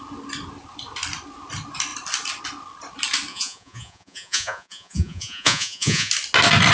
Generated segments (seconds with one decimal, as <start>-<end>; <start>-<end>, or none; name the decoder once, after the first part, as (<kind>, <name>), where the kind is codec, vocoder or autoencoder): 3.3-6.1 (vocoder, Vocos)